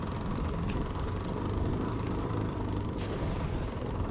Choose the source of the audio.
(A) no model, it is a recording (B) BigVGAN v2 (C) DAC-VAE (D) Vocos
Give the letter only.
B